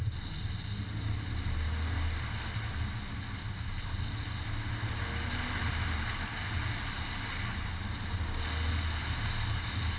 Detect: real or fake real